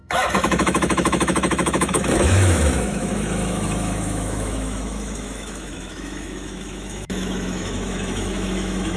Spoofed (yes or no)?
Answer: yes